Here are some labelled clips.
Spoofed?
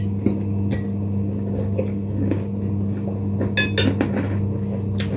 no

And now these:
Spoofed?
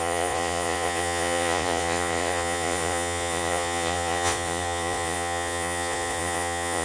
yes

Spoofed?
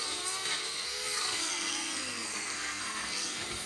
yes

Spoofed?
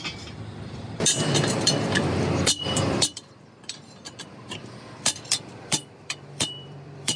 yes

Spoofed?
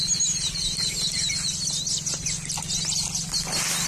no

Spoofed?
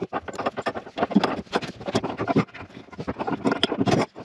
no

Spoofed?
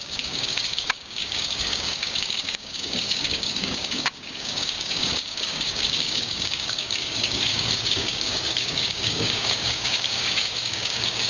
yes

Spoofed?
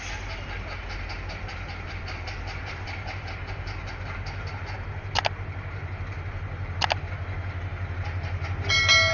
no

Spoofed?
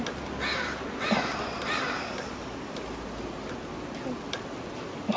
no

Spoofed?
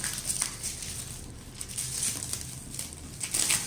no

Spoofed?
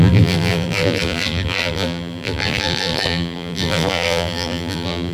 yes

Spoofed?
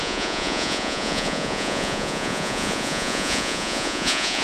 yes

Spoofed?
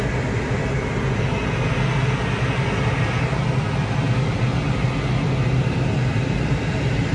no